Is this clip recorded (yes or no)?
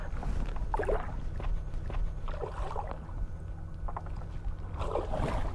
yes